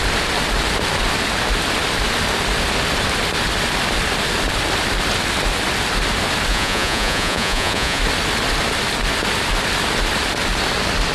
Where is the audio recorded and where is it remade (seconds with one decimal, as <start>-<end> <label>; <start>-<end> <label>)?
0.0-6.5 recorded; 6.5-8.0 remade; 8.0-11.1 recorded